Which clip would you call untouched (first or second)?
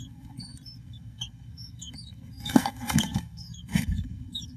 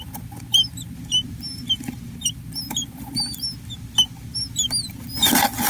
second